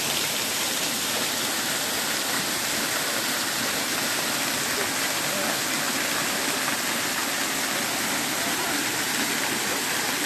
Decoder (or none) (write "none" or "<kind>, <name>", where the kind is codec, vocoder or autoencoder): none